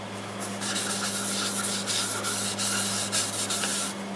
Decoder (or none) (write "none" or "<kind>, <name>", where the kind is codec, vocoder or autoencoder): none